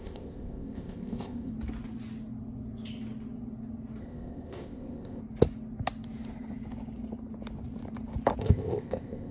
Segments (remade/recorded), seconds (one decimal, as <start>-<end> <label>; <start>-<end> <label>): 0.0-1.5 remade; 1.5-4.0 recorded; 4.0-5.2 remade; 5.2-8.4 recorded; 8.4-9.3 remade